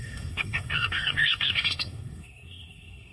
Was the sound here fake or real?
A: fake